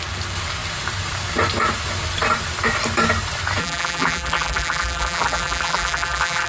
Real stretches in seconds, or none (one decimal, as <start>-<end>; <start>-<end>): 0.0-3.6